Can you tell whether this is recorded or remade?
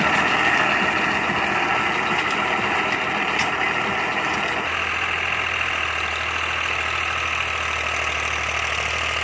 recorded